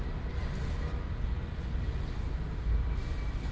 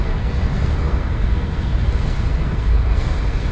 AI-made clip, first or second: second